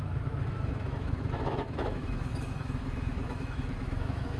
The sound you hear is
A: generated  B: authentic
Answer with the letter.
A